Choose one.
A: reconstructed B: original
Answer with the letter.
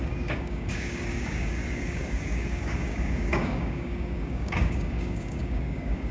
A